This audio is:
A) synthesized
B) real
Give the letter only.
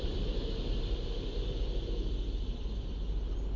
B